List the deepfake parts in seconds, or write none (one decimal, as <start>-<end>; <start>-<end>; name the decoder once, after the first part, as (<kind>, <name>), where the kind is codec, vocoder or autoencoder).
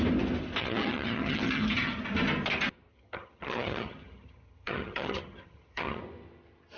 0.6-2.0 (vocoder, HiFi-GAN); 2.9-6.0